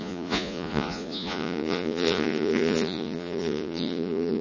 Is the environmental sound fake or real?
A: fake